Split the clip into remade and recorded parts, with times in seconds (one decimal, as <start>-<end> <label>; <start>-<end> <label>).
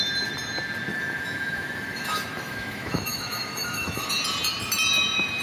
0.0-0.9 recorded; 0.9-4.1 remade; 4.1-5.4 recorded